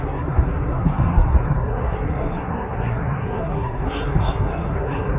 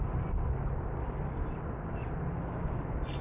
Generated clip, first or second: first